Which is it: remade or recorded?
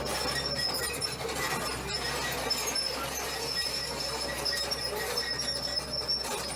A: recorded